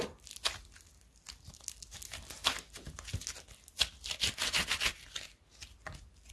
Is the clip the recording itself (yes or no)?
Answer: yes